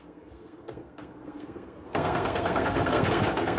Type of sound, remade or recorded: remade